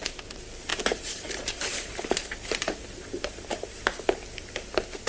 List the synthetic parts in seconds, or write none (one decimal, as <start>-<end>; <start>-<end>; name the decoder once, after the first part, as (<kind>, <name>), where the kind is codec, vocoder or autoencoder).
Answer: 0.7-3.8 (vocoder, BigVGAN v2)